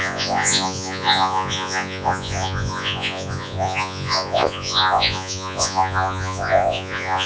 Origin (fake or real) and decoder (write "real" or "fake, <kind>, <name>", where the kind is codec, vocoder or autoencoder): fake, vocoder, Vocos